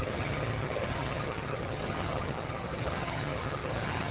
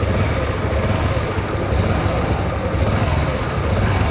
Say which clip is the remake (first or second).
first